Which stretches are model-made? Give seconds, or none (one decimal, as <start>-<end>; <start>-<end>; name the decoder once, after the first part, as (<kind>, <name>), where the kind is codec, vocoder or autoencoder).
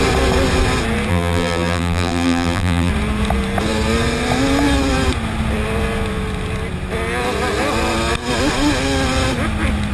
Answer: 1.1-2.9 (vocoder, BigVGAN v2)